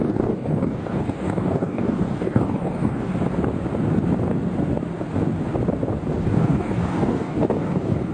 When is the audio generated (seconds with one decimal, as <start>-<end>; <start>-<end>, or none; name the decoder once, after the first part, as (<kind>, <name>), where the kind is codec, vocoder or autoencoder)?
0.0-3.1 (codec, DAC); 6.2-8.1